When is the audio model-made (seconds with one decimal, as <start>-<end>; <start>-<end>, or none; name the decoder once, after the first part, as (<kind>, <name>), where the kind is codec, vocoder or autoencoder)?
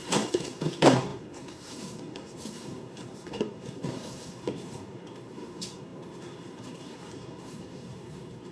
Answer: 0.0-8.5 (codec, SNAC)